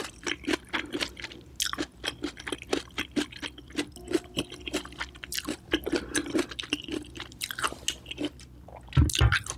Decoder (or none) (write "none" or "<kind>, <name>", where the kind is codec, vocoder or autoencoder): none